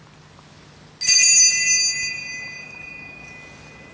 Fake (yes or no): no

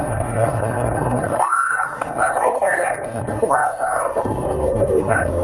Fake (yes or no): yes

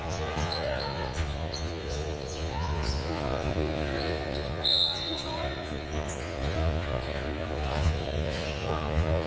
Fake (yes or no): yes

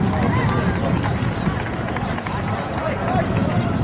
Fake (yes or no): no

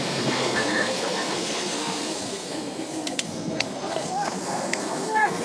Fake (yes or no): yes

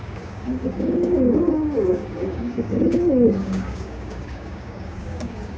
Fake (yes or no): yes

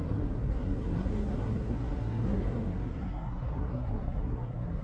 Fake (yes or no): yes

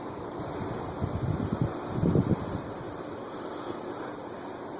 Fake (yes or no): no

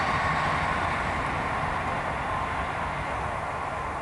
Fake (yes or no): no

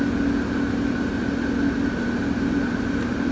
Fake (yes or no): no